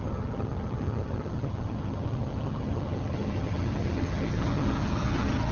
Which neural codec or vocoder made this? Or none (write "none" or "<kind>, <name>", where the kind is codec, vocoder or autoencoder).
vocoder, HiFi-GAN